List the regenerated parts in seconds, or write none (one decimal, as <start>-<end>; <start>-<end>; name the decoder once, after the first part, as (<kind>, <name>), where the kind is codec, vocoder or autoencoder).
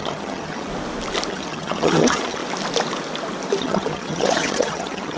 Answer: 0.0-0.7 (vocoder, HiFi-GAN); 1.3-2.4; 3.6-5.2